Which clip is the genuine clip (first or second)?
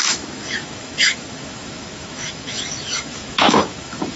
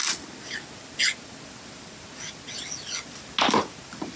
second